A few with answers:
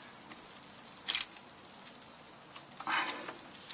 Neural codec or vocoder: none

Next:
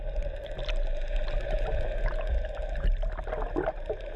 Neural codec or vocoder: none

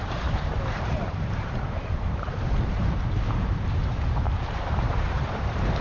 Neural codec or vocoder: vocoder, BigVGAN v2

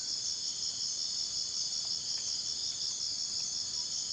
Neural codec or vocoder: none